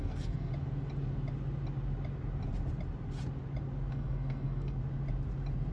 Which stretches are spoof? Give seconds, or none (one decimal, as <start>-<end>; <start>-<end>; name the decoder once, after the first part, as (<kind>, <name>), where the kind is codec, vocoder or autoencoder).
0.0-0.5 (codec, SNAC); 3.9-4.8